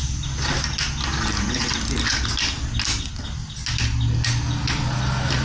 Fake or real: real